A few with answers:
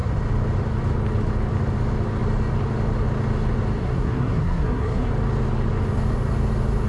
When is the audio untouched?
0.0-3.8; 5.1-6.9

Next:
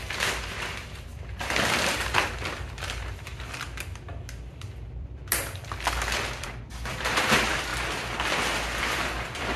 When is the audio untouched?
3.3-4.5; 5.2-6.7; 7.7-8.8